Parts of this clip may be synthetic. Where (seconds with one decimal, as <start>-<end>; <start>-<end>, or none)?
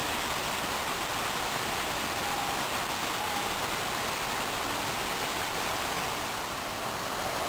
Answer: none